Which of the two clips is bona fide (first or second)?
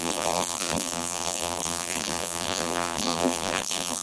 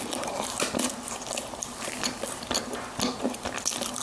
second